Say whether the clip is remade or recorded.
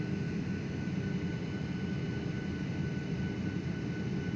recorded